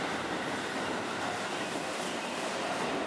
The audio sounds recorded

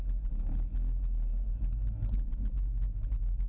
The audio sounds recorded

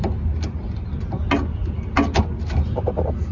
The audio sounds recorded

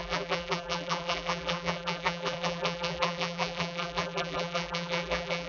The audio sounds remade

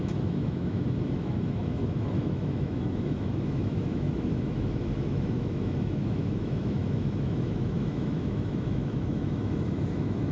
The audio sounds remade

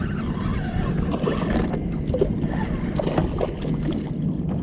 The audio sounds recorded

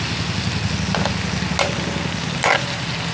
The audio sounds recorded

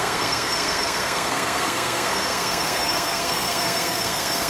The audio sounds remade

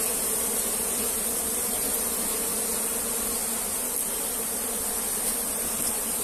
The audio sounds recorded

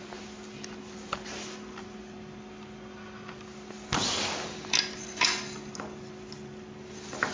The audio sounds recorded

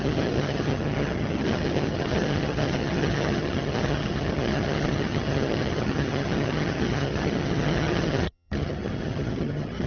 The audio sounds remade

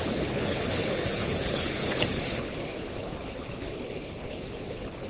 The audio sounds remade